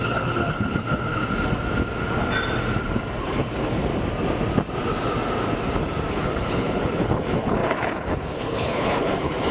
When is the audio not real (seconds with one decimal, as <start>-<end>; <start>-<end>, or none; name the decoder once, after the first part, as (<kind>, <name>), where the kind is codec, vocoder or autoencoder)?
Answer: 0.0-1.2 (codec, HILCodec); 3.2-3.9; 6.1-9.5